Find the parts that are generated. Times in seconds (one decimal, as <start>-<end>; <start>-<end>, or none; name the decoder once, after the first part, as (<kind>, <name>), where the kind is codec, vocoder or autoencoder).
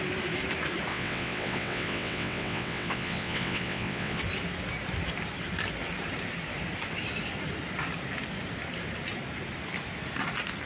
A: 0.9-4.2 (vocoder, WaveNeXt)